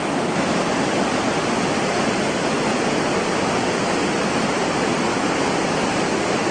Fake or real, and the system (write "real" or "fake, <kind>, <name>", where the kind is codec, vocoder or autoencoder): real